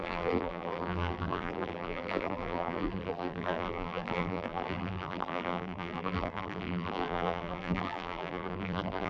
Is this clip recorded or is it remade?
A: remade